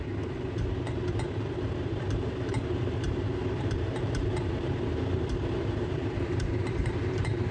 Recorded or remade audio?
remade